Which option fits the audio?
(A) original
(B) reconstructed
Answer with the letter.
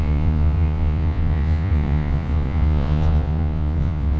B